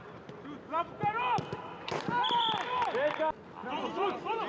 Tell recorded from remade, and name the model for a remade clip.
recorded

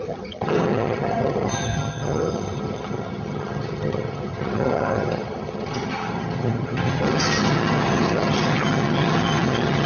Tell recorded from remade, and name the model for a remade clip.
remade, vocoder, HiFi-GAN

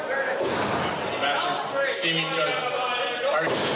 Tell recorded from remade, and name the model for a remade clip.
recorded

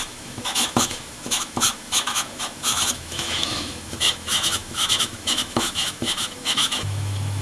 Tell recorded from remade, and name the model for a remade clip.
remade, autoencoder, DAC-VAE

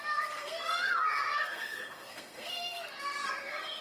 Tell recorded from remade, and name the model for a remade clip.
remade, codec, SNAC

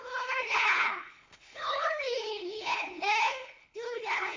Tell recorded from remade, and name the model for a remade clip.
remade, codec, HILCodec